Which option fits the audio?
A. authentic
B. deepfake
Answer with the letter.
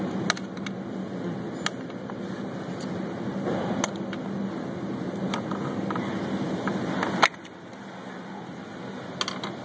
A